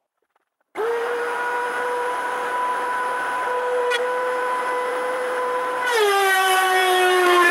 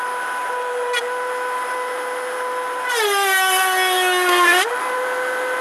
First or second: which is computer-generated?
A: first